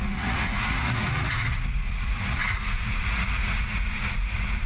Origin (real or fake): fake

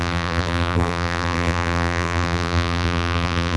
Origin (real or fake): fake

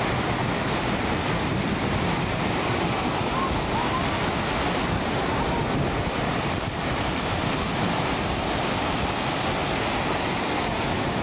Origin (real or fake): real